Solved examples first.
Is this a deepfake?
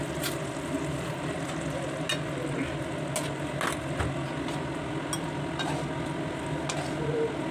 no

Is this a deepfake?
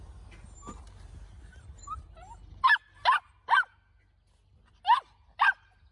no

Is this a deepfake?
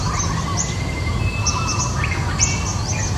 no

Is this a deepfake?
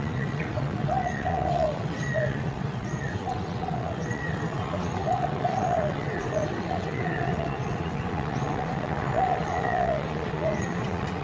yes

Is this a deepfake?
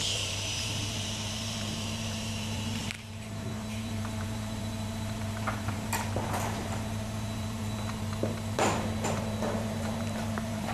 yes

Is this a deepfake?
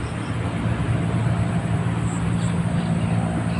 no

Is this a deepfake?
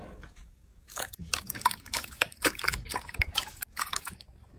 yes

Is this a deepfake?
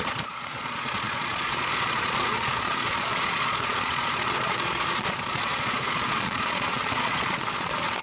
yes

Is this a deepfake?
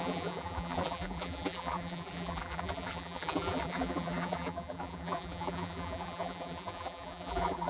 yes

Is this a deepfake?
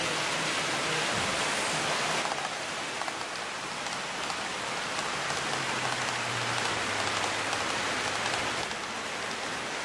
no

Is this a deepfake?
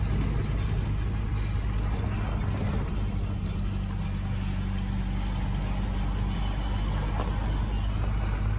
no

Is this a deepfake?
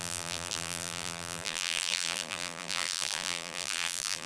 yes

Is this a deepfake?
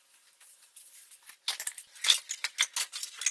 no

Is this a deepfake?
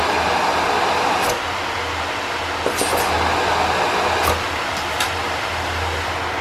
no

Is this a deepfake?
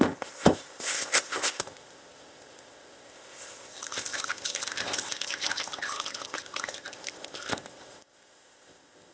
yes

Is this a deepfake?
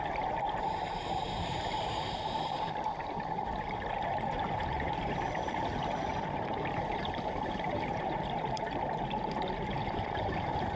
yes